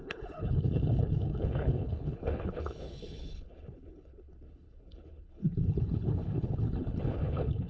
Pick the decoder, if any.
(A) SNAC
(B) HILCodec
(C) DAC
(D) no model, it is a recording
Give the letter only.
B